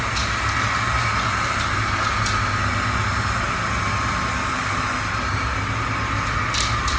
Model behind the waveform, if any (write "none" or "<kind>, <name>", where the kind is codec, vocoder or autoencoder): none